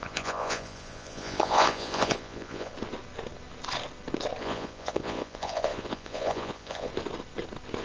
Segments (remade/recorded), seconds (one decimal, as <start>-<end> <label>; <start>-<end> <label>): 0.0-2.7 remade; 2.7-4.4 recorded; 4.4-6.9 remade; 6.9-7.8 recorded